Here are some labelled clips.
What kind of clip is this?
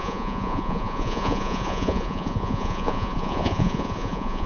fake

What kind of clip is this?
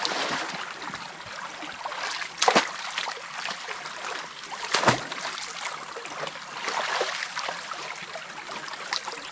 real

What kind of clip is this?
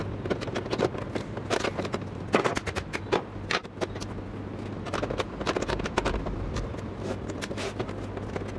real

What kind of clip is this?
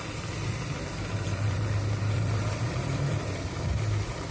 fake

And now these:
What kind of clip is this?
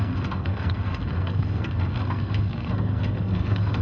fake